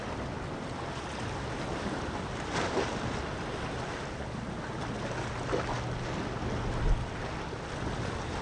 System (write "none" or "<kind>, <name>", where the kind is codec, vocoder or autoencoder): none